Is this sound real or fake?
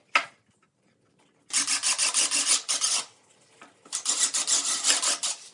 real